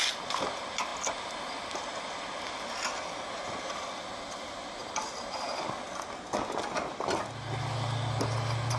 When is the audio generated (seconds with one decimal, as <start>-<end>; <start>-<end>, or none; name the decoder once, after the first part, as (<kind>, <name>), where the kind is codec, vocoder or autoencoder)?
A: none